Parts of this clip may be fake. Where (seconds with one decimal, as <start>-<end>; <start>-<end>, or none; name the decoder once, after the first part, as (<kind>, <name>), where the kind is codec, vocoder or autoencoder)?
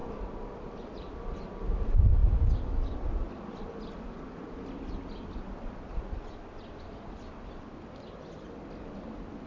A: none